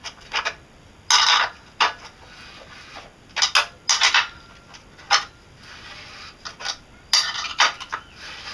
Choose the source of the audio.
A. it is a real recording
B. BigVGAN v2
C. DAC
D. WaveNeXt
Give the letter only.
A